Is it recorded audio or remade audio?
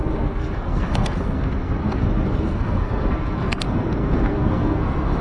remade